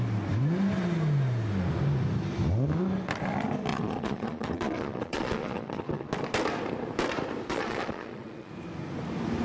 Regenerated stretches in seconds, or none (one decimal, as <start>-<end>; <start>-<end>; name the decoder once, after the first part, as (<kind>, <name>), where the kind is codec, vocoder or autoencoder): 3.7-6.1 (vocoder, Vocos); 7.5-8.5